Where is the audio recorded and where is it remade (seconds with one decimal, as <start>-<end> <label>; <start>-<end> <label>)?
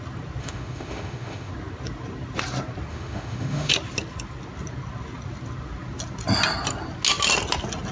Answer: 0.0-0.4 recorded; 0.4-1.5 remade; 1.5-2.9 recorded; 2.9-3.7 remade; 3.7-7.9 recorded